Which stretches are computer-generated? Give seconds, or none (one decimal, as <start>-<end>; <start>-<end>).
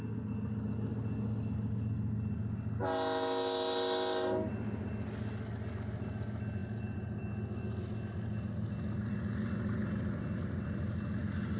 none